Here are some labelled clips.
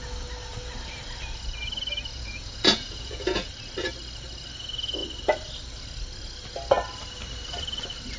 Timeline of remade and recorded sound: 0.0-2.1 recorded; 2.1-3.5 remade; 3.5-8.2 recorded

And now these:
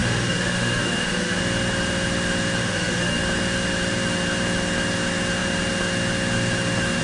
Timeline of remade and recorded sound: 0.0-1.4 remade; 1.4-2.6 recorded; 2.6-3.2 remade; 3.2-7.0 recorded

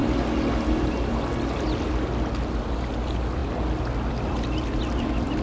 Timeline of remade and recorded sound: 0.0-5.4 recorded

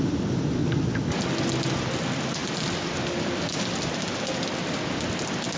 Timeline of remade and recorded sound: 0.0-2.4 recorded; 2.4-3.6 remade; 3.6-5.6 recorded

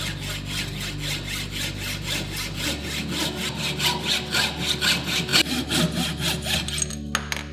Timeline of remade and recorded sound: 0.0-7.5 recorded

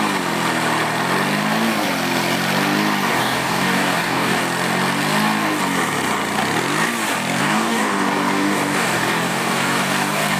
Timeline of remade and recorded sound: 0.0-3.1 recorded; 3.1-4.4 remade; 4.4-7.4 recorded; 7.4-10.4 remade